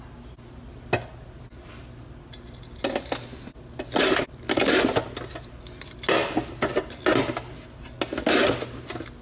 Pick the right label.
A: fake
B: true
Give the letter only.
B